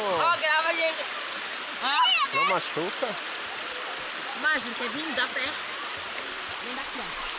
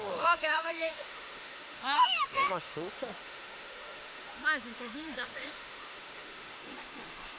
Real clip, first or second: first